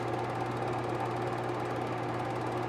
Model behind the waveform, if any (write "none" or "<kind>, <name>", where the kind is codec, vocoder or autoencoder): none